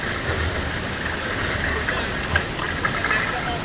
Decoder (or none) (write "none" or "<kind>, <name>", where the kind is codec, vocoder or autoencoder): none